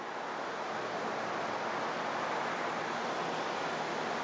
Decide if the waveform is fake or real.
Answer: real